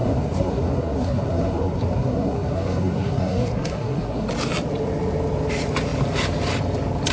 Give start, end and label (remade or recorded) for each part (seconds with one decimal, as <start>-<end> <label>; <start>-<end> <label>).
0.0-4.3 remade; 4.3-7.1 recorded